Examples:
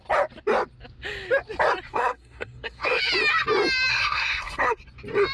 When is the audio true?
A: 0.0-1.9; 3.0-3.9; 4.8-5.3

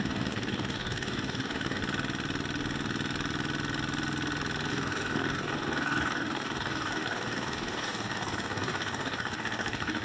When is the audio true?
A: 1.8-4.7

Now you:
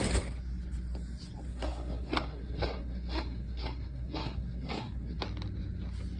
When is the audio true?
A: 0.0-1.5; 5.2-6.2

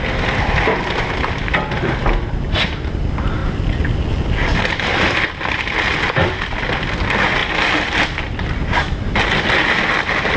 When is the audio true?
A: 0.0-10.4

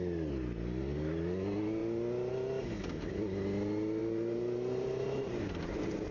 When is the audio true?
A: 0.0-4.0; 5.4-6.1